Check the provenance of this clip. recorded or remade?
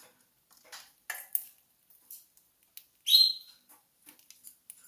recorded